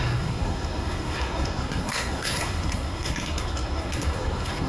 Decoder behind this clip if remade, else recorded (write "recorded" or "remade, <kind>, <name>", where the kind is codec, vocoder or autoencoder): remade, codec, SNAC